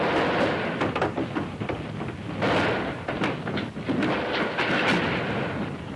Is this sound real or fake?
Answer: real